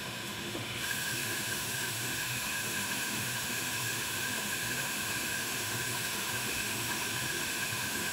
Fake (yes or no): yes